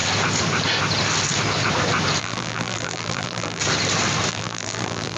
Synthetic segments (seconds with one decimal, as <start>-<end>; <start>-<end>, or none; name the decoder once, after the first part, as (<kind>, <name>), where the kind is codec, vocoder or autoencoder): 2.2-3.6 (vocoder, BigVGAN v2); 4.3-5.2